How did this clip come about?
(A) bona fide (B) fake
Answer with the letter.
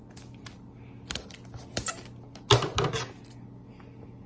A